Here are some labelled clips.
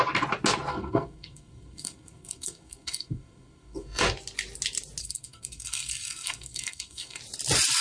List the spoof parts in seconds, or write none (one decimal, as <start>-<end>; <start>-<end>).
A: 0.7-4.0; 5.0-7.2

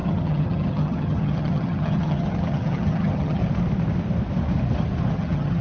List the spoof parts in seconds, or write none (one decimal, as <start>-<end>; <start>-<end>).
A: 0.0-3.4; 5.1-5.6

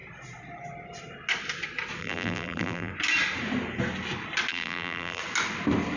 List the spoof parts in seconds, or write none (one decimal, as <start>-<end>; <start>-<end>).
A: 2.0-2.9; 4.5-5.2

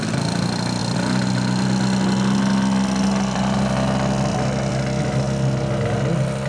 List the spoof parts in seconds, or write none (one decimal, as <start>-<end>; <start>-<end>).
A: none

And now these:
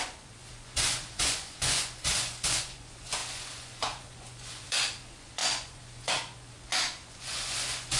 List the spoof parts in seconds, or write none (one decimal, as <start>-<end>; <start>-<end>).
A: 0.0-8.0

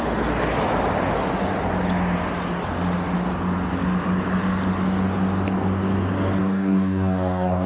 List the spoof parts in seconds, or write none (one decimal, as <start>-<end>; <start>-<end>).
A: 6.4-7.7